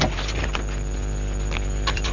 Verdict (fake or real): real